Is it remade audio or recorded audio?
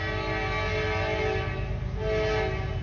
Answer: recorded